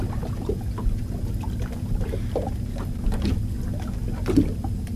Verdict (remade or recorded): recorded